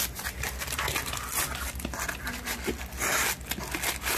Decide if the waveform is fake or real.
real